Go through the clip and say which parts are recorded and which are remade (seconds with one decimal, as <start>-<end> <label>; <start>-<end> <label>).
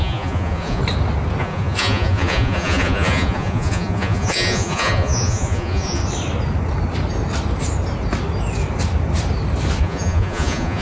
0.0-0.8 remade; 0.8-1.4 recorded; 1.4-6.0 remade; 6.0-9.8 recorded; 9.8-10.8 remade